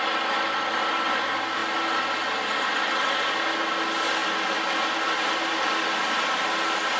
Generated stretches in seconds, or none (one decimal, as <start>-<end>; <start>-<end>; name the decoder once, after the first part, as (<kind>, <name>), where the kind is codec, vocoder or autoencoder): none